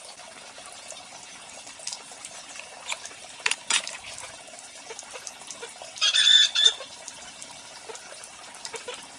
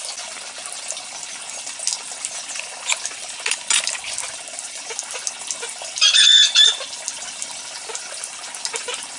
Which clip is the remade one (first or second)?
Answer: first